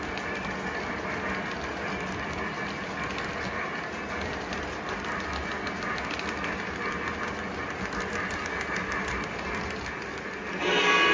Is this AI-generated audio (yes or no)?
no